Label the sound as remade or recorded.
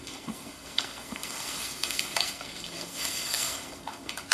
remade